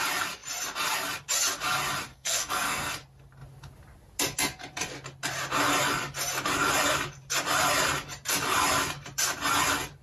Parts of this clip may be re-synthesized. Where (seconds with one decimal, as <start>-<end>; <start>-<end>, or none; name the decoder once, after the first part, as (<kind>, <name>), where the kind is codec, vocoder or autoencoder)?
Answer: 2.1-2.9 (codec, SNAC)